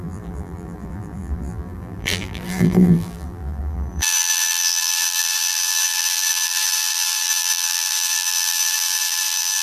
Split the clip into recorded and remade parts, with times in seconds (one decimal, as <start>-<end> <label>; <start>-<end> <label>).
0.0-9.6 remade